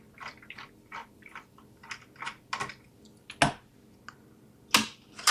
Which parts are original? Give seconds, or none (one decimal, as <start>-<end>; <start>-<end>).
0.0-1.0; 1.9-5.3